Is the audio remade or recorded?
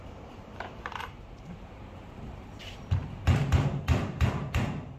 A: remade